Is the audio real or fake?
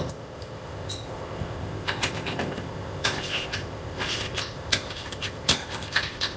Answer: fake